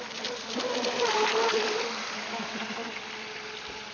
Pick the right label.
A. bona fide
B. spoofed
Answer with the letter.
B